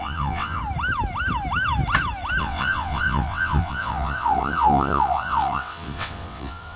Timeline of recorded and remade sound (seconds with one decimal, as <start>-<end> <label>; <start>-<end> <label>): 0.0-0.6 remade; 0.6-2.4 recorded; 2.4-6.8 remade